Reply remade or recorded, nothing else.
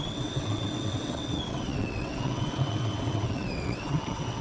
remade